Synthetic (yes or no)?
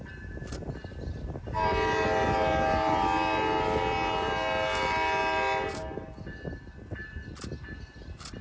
no